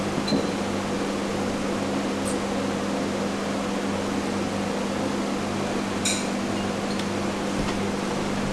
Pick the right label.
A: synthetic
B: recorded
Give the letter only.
B